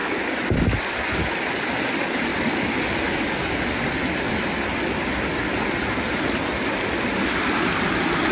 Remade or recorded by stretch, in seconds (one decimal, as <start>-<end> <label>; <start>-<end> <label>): 0.0-8.3 recorded